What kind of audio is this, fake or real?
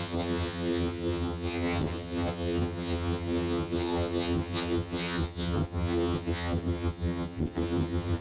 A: fake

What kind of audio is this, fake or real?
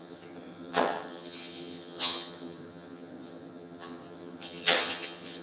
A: fake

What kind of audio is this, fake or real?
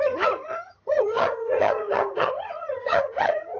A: fake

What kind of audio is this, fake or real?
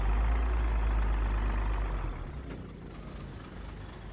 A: real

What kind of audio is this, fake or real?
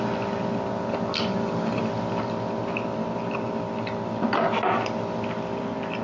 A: real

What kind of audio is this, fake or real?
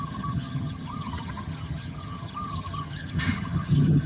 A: fake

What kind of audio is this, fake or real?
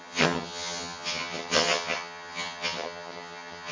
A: fake